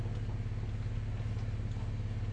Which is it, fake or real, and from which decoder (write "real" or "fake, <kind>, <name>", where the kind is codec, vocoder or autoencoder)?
real